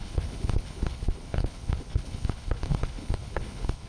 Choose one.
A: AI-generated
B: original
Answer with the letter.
A